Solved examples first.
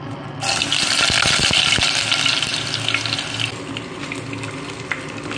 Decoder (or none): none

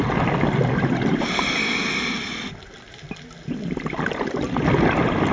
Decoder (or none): none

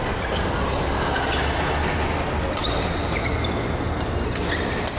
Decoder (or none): none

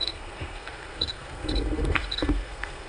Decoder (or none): codec, SNAC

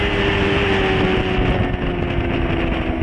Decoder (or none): none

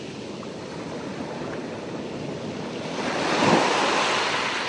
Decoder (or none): none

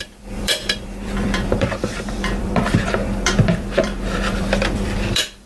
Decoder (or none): vocoder, BigVGAN v2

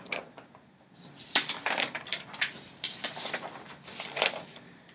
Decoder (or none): none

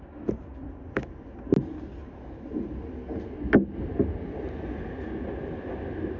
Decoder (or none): none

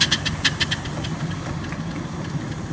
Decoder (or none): none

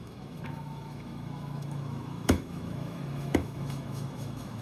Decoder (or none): autoencoder, DAC-VAE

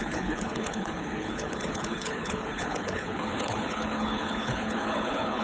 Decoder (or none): codec, HILCodec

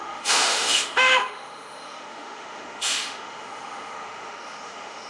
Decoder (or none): autoencoder, DAC-VAE